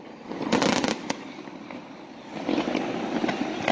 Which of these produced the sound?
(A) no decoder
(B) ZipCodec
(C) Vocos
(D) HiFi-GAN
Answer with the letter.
A